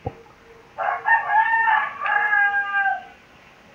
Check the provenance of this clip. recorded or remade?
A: recorded